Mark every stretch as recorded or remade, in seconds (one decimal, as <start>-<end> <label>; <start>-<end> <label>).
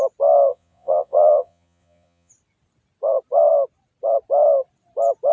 0.0-0.5 recorded; 0.5-2.3 remade; 2.3-5.3 recorded